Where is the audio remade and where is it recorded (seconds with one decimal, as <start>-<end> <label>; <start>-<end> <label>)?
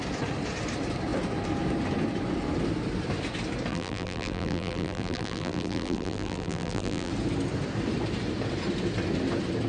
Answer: 0.0-3.7 recorded; 3.7-7.1 remade; 7.1-9.7 recorded